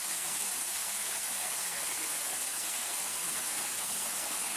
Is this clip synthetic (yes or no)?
yes